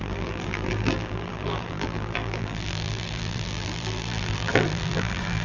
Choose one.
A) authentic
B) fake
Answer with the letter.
B